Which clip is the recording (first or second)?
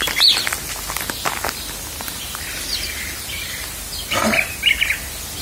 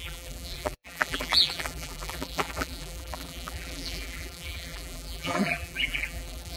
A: first